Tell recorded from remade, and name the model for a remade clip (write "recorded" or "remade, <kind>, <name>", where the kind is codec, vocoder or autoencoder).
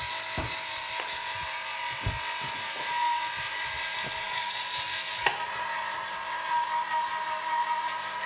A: recorded